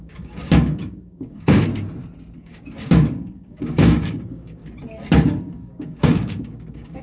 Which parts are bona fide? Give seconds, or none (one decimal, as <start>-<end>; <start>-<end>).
1.7-2.4; 4.6-5.4